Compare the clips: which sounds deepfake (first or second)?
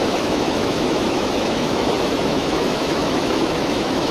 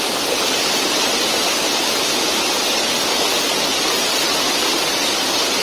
first